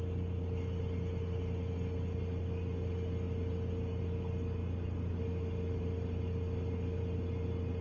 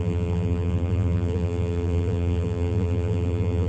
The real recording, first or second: first